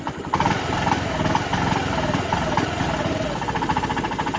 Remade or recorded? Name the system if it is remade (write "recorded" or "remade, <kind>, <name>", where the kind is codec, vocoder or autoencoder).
recorded